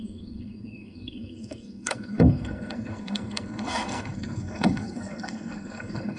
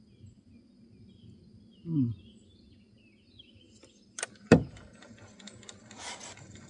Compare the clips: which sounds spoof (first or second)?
first